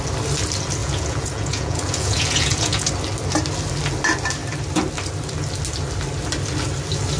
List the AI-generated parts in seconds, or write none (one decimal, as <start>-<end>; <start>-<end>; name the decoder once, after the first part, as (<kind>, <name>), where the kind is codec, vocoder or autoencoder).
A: 0.8-2.9 (vocoder, Vocos)